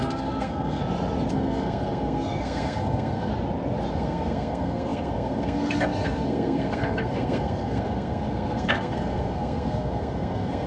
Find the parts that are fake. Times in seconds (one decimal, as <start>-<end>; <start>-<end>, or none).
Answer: 0.0-0.8; 1.3-3.3; 3.9-10.7